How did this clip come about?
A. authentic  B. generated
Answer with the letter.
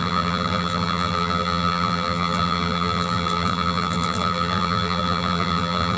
B